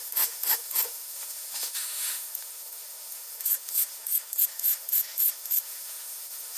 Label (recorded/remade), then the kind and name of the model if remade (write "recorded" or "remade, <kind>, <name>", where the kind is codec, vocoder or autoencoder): remade, autoencoder, DAC-VAE